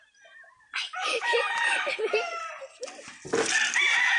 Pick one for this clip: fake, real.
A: real